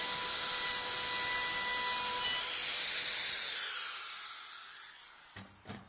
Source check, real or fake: real